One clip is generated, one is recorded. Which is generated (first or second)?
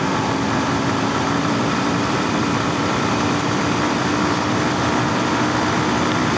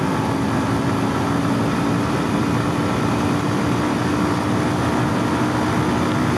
first